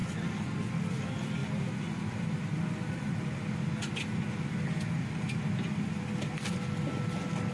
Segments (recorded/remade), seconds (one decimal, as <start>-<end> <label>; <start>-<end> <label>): 0.0-7.5 recorded